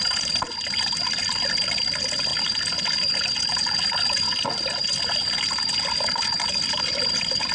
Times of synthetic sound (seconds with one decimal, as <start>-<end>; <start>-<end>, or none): 0.0-2.3; 6.8-7.5